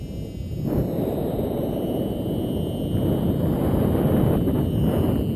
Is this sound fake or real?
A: real